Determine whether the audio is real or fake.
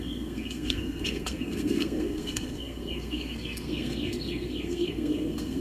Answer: fake